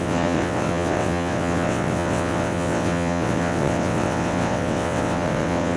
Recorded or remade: remade